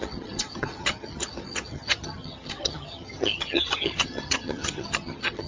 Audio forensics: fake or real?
fake